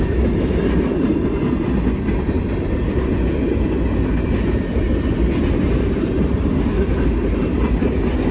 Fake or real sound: real